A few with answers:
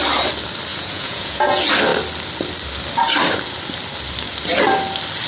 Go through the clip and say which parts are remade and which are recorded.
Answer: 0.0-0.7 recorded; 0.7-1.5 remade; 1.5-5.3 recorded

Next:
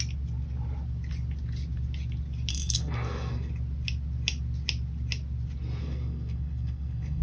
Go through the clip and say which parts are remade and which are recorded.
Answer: 0.0-2.5 recorded; 2.5-3.5 remade; 3.5-5.8 recorded; 5.8-7.2 remade

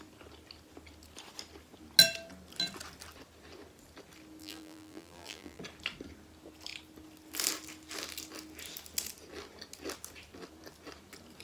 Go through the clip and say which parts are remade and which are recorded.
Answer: 0.0-4.4 recorded; 4.4-5.6 remade; 5.6-11.4 recorded

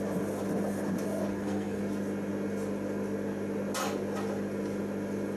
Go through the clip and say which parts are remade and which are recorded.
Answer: 0.0-1.3 recorded; 1.3-1.8 remade; 1.8-5.4 recorded

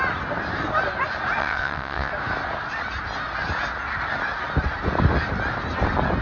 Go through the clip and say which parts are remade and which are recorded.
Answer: 0.0-1.4 recorded; 1.4-2.1 remade; 2.1-6.2 recorded

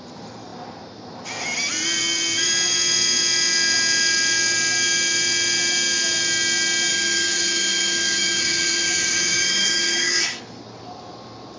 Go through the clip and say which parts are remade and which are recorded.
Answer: 0.0-6.9 recorded; 6.9-10.4 remade; 10.4-11.6 recorded